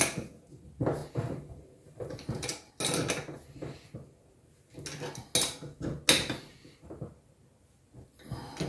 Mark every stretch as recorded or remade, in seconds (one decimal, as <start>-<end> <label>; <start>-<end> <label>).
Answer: 0.0-1.0 recorded; 1.0-2.7 remade; 2.7-8.7 recorded